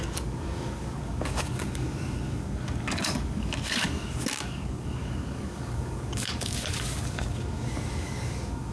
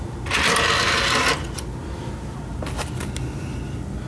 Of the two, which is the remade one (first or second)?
first